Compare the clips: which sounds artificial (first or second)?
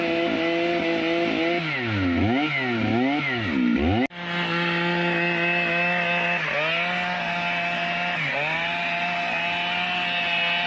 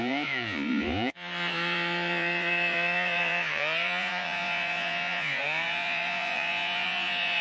second